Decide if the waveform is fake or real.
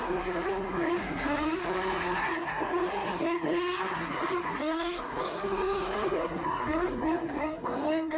fake